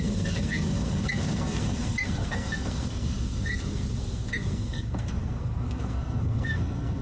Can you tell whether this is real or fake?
fake